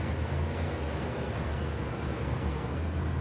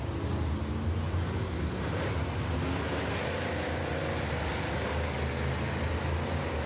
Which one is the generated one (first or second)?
first